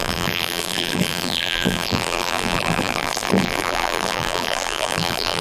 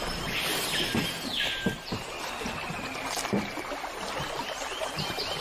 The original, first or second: second